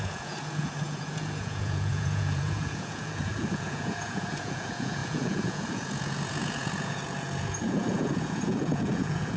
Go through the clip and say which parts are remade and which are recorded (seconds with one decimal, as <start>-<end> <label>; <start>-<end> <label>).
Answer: 0.0-9.4 remade